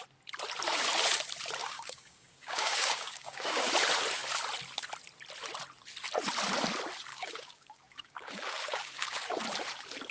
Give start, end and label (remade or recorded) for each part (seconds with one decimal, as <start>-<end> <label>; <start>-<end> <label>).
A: 0.0-1.6 recorded; 1.6-3.7 remade; 3.7-7.1 recorded; 7.1-9.4 remade; 9.4-10.1 recorded